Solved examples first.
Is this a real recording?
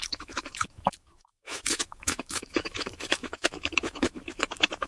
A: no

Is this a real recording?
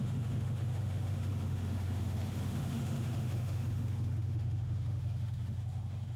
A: no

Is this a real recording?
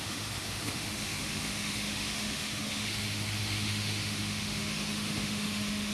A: no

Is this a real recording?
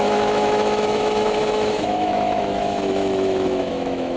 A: no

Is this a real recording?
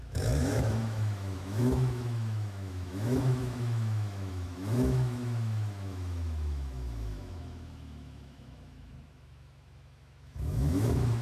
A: no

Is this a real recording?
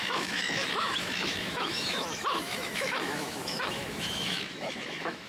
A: no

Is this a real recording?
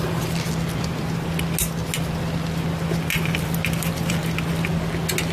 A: yes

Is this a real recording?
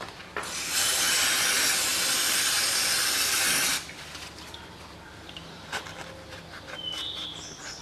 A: yes